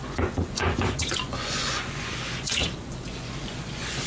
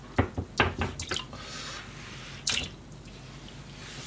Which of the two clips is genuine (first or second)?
second